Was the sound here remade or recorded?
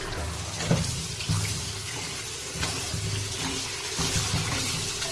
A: recorded